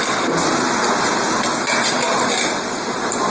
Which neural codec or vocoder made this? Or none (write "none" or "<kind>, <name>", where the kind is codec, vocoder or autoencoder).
none